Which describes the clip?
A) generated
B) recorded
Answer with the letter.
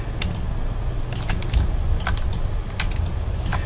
B